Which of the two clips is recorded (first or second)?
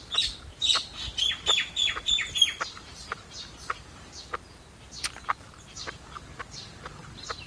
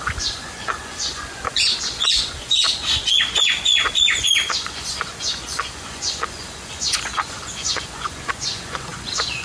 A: first